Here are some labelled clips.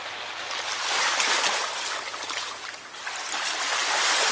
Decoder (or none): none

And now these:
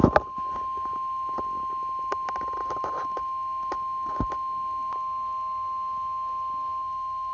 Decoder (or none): none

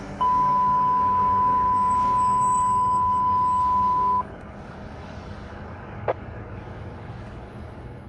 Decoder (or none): codec, DAC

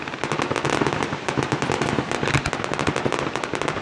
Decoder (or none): none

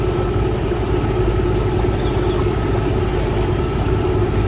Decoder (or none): none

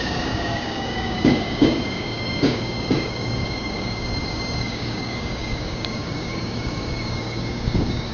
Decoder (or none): codec, DAC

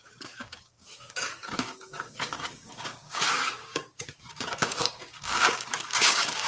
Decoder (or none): codec, DAC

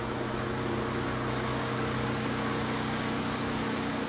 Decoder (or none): codec, DAC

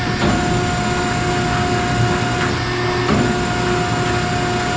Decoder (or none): none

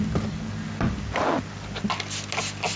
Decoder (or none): none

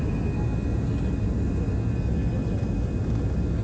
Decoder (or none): none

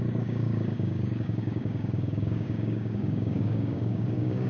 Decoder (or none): codec, DAC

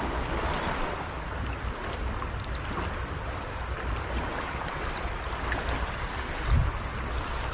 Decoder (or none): none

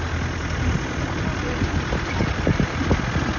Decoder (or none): none